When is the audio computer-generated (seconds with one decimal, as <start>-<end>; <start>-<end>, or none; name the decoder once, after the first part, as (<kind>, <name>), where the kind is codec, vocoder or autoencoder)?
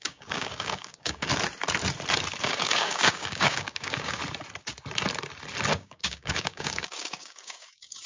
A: 0.0-1.3 (codec, DAC); 2.4-4.2; 5.7-8.1